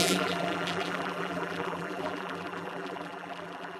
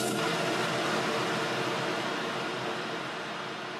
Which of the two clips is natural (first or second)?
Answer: second